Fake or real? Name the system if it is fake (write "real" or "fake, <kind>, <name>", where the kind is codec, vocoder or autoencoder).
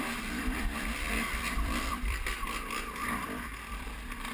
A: fake, vocoder, BigVGAN v2